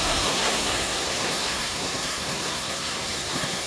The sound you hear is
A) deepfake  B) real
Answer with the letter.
A